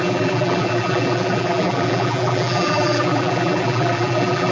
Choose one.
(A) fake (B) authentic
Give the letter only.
A